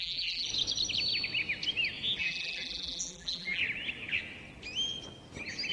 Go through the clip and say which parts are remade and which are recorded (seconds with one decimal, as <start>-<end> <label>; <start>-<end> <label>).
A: 0.0-0.5 remade; 0.5-2.2 recorded; 2.2-3.6 remade; 3.6-5.7 recorded